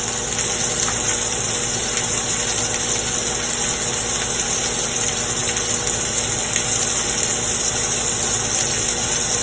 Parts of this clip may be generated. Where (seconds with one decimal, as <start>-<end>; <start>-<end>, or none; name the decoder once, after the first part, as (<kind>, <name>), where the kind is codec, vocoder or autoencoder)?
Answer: none